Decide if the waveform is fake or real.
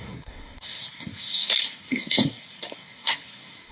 fake